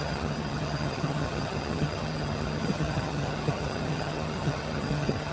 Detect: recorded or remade remade